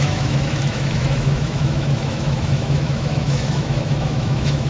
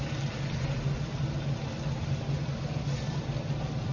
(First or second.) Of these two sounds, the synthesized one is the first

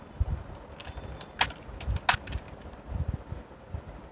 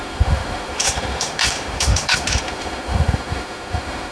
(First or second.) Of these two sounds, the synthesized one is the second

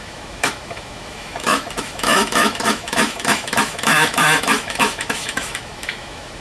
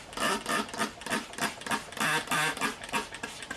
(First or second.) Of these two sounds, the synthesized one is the first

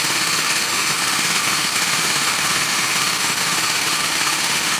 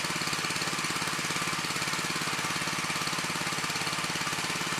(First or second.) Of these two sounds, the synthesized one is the first